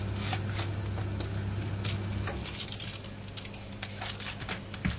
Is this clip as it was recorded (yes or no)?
yes